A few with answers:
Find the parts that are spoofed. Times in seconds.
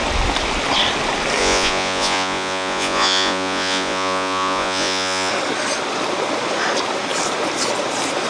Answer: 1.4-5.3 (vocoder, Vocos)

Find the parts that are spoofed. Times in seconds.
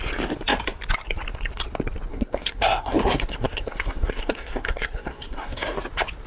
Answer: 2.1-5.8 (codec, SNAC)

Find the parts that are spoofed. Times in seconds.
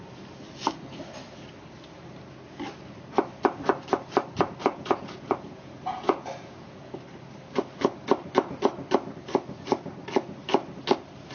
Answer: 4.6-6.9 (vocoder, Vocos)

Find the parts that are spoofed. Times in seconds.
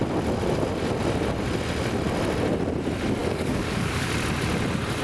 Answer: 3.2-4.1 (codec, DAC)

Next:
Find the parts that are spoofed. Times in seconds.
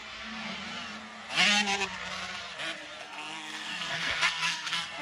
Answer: 3.0-5.0 (codec, SNAC)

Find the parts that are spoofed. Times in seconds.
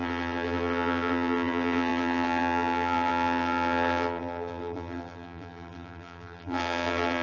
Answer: 0.0-7.2 (vocoder, BigVGAN v2)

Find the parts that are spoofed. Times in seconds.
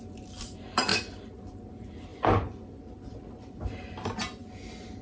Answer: 0.9-1.7 (vocoder, BigVGAN v2); 2.1-3.8